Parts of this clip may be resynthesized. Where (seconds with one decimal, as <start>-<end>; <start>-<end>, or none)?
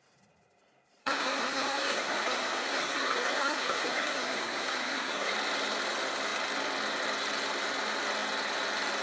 1.0-5.3